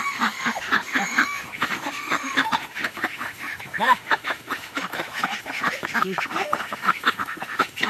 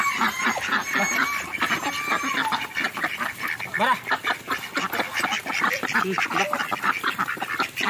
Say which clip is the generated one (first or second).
first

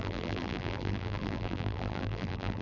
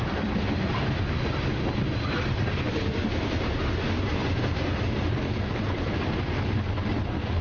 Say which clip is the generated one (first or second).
first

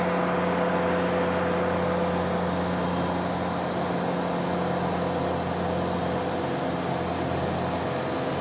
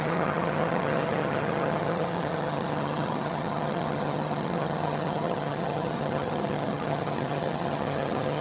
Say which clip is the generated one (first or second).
second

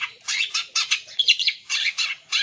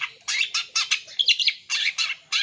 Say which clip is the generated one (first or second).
first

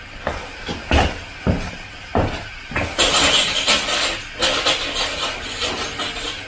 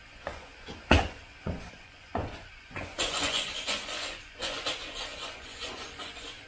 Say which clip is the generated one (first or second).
second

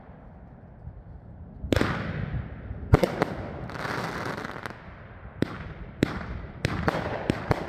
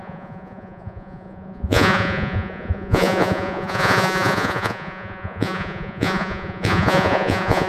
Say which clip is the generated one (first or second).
second